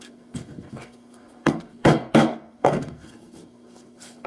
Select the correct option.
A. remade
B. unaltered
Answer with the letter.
A